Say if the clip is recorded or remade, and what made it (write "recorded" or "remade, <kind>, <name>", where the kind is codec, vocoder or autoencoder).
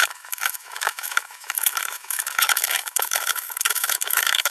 remade, autoencoder, DAC-VAE